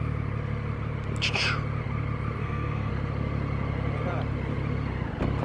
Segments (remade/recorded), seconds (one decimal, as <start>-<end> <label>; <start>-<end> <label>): 0.0-2.4 recorded; 2.4-2.9 remade; 2.9-5.4 recorded